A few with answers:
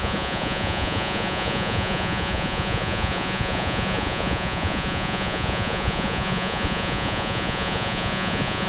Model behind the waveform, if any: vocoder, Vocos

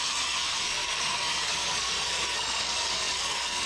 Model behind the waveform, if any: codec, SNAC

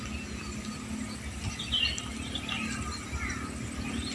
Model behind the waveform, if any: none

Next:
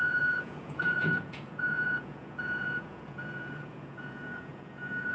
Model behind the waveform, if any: vocoder, Vocos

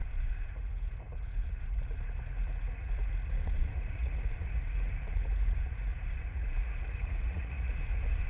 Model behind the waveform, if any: vocoder, Vocos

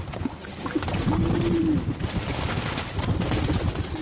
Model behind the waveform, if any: none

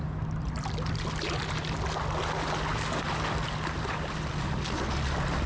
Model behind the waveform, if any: none